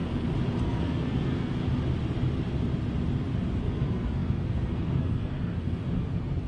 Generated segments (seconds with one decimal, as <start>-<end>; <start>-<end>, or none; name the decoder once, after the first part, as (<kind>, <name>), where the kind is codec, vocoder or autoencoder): 0.6-1.6 (codec, SNAC); 3.6-6.5